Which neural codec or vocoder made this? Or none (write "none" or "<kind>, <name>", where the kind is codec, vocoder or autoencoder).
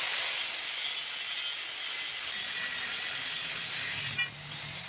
none